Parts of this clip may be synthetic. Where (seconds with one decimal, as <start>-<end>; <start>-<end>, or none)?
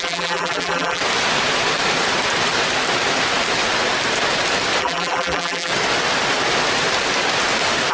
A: 0.0-1.0; 4.8-5.7